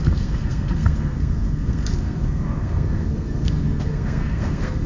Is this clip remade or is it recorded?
remade